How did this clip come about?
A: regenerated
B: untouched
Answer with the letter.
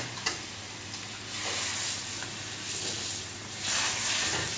B